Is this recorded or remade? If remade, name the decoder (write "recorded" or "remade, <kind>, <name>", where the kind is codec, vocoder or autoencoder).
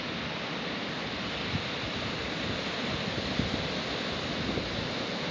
recorded